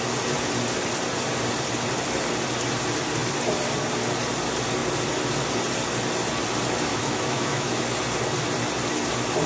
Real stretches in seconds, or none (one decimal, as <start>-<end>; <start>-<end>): 0.0-6.9; 7.8-9.5